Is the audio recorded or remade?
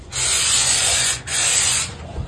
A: remade